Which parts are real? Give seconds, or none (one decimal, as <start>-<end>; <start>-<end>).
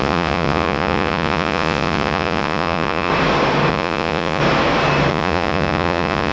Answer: 3.1-3.7; 4.4-5.1